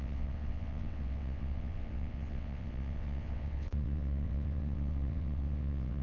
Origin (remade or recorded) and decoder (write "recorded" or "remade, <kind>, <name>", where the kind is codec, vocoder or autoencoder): remade, vocoder, WaveNeXt